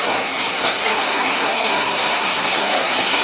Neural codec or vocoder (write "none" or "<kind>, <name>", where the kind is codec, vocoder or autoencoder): codec, SNAC